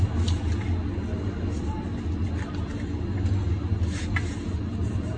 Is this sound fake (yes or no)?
no